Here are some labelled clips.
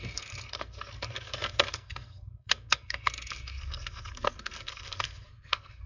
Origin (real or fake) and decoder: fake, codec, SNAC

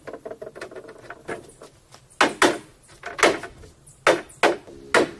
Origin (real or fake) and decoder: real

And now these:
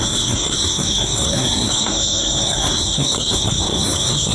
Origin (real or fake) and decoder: fake, codec, SNAC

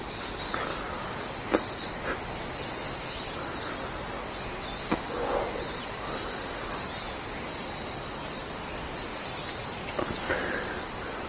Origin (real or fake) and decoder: real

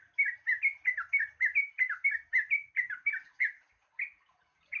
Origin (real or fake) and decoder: real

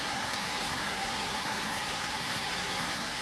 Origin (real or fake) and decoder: fake, codec, SNAC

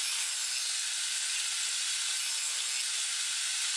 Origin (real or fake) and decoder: real